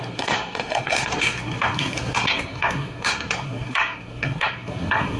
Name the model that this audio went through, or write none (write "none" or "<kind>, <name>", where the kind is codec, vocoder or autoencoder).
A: codec, SNAC